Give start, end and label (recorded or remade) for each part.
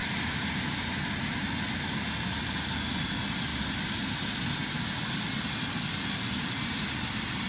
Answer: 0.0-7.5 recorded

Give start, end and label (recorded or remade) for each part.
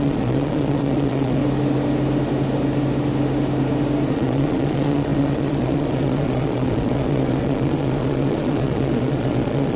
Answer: 0.0-1.4 remade; 1.4-4.1 recorded; 4.1-9.8 remade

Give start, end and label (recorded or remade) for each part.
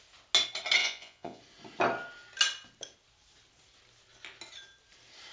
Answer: 0.0-0.8 recorded; 0.8-1.4 remade; 1.4-5.3 recorded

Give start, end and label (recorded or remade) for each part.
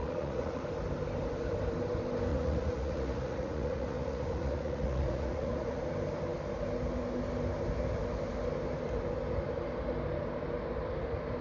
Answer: 0.0-0.6 remade; 0.6-2.3 recorded; 2.3-5.8 remade; 5.8-11.4 recorded